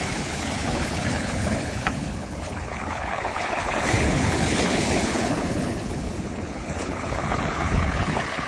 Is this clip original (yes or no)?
no